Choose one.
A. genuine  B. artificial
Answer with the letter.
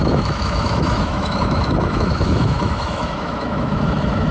B